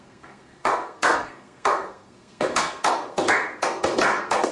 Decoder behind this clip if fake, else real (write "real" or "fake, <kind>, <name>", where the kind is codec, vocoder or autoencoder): fake, codec, SNAC